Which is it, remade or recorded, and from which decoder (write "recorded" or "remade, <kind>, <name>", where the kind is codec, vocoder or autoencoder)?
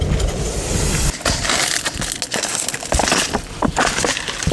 recorded